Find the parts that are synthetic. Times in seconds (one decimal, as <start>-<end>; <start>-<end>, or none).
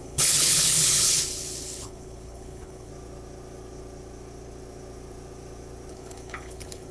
0.0-2.9; 5.9-6.9